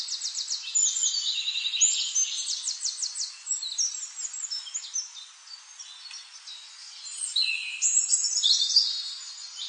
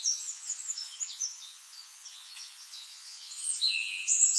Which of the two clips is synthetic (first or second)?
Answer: second